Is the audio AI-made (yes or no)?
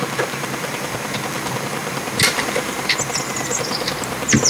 no